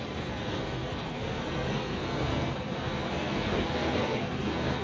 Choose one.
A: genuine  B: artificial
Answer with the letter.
B